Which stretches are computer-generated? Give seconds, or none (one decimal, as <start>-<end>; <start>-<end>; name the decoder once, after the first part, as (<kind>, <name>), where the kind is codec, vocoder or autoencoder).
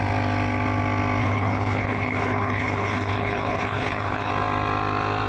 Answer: 1.2-4.3 (codec, HILCodec)